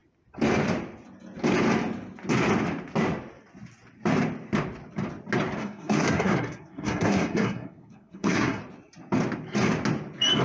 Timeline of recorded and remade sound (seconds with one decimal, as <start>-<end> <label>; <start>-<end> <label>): 0.0-5.6 recorded; 5.6-8.6 remade; 8.6-10.4 recorded